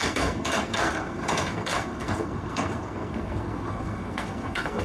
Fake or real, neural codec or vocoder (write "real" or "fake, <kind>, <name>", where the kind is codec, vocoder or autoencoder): fake, codec, SNAC